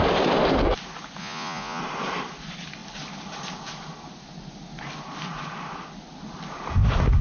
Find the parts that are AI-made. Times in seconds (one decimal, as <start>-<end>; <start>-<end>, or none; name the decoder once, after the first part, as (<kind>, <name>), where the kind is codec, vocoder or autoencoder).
1.2-1.8 (vocoder, Vocos)

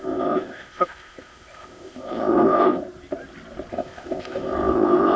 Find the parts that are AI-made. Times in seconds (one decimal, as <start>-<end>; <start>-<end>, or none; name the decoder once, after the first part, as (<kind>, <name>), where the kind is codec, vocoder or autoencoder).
0.0-2.8 (codec, ZipCodec); 3.7-5.2

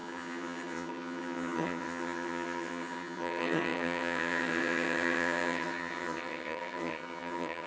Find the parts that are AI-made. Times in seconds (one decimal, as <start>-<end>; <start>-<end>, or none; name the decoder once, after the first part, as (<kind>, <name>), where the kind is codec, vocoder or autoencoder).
0.0-7.7 (vocoder, HiFi-GAN)

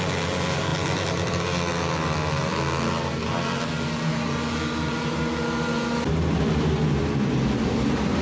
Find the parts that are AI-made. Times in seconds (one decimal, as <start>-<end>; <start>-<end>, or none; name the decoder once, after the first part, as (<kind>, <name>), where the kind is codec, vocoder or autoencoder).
none

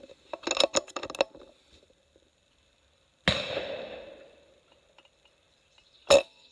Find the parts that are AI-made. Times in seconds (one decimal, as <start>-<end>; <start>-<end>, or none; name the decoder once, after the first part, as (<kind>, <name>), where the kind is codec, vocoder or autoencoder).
none

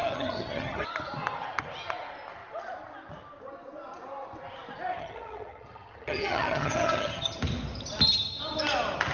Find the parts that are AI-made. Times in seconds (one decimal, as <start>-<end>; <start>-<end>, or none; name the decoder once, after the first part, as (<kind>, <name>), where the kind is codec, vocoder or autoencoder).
0.0-0.8 (vocoder, HiFi-GAN); 5.0-7.4

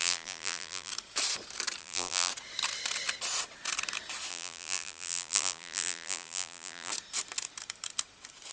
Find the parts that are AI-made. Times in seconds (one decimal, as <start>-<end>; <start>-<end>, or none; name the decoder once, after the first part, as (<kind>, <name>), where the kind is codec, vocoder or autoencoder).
0.0-0.9 (vocoder, BigVGAN v2); 1.8-2.3; 4.3-6.9